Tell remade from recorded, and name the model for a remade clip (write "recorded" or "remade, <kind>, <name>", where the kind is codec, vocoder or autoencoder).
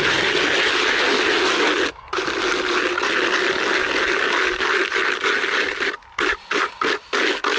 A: recorded